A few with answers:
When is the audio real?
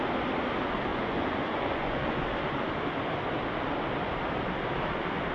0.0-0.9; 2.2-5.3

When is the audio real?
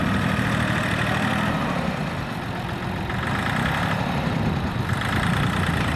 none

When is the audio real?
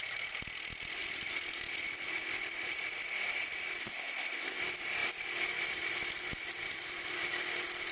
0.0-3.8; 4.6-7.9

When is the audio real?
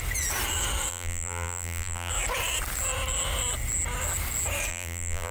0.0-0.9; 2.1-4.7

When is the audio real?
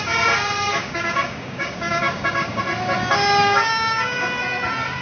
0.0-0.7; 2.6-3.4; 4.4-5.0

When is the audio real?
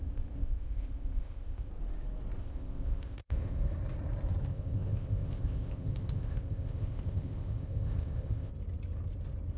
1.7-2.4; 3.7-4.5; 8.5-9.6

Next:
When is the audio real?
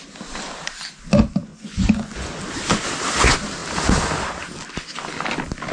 0.0-1.5; 2.4-5.7